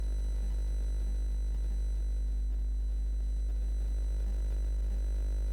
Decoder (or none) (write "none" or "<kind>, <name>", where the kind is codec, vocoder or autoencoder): none